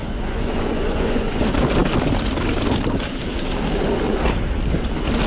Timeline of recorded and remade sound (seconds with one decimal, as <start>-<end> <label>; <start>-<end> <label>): 0.0-1.4 remade; 1.4-5.3 recorded